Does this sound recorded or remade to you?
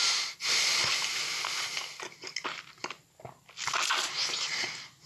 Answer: recorded